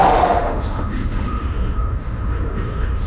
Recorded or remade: remade